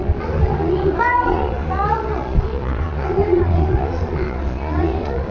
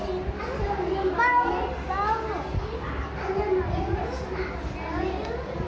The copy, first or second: first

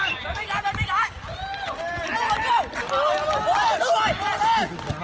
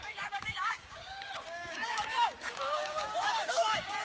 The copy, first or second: second